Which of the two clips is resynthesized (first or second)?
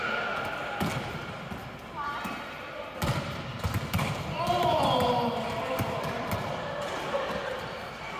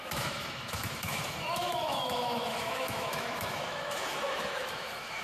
second